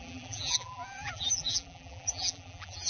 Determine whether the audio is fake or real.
fake